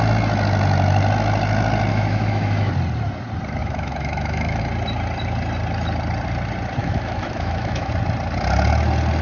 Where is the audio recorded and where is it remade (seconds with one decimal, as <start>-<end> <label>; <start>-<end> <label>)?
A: 0.0-1.9 recorded; 1.9-2.7 remade; 2.7-3.6 recorded; 3.6-4.6 remade; 4.6-6.8 recorded; 6.8-7.9 remade; 7.9-9.2 recorded